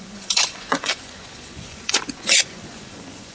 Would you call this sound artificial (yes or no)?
yes